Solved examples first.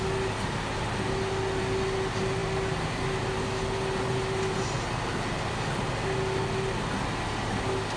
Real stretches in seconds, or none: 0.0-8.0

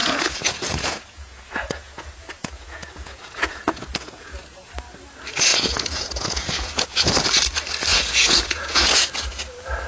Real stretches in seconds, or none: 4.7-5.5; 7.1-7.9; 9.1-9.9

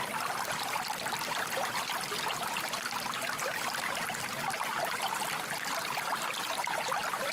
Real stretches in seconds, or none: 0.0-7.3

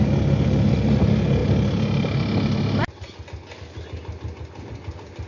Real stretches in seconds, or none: 0.0-5.3